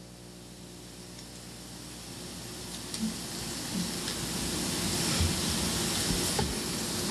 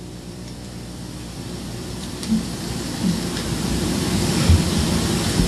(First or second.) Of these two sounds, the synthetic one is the second